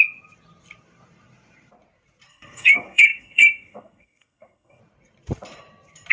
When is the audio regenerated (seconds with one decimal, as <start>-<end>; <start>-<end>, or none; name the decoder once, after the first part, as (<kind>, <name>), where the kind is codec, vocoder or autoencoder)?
2.3-4.8 (codec, SNAC)